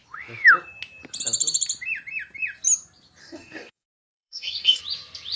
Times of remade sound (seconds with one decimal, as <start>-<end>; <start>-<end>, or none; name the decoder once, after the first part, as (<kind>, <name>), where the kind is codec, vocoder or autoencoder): 3.2-4.8 (codec, DAC)